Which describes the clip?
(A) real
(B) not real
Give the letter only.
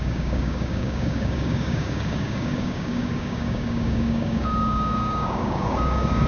B